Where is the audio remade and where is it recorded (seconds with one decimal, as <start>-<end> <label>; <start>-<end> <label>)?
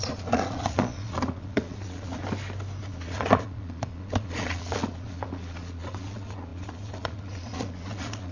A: 0.0-2.2 remade; 2.2-2.8 recorded; 2.8-8.3 remade